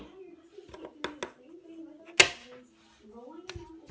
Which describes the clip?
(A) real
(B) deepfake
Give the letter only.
A